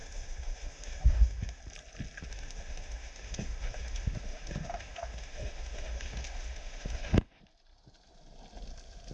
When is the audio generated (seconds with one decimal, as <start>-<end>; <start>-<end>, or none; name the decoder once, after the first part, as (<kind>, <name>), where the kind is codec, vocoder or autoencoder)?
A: 0.0-1.6 (autoencoder, DAC-VAE); 2.3-7.4